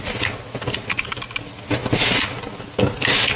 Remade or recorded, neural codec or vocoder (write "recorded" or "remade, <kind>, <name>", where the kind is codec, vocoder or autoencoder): recorded